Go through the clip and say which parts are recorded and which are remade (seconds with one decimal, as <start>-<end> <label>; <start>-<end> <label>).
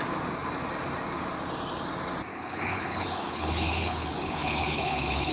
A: 0.0-2.3 recorded; 2.3-5.3 remade